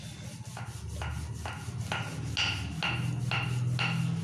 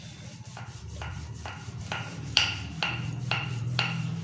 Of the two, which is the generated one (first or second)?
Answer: second